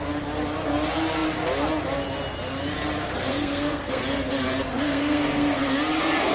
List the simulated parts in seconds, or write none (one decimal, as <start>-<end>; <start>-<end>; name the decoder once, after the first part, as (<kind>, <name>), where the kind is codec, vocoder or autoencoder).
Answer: 3.3-4.0 (codec, SNAC); 4.7-5.6